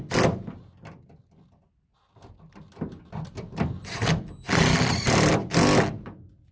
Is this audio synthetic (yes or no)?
no